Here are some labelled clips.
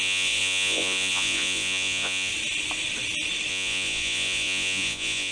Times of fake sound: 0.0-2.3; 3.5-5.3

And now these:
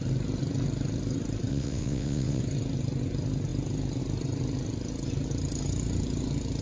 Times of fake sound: 1.5-2.4

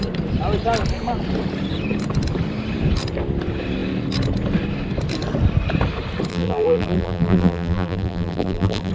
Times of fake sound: 6.3-8.9

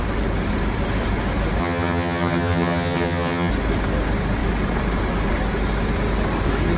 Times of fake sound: 1.6-3.5

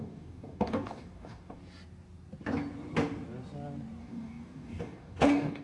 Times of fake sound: 0.0-1.6; 4.0-5.6